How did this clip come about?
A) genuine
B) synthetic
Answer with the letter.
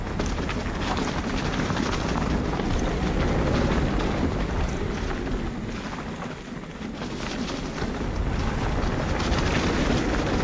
A